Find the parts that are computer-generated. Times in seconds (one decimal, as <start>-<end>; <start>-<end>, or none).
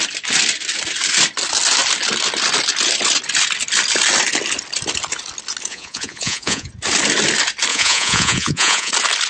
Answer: 5.7-6.7; 7.7-8.9